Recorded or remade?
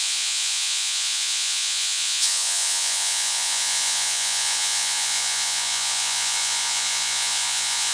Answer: remade